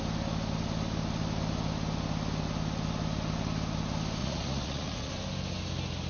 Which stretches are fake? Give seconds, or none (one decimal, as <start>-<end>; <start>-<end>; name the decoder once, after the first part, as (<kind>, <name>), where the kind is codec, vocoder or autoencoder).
4.2-5.1 (vocoder, Vocos)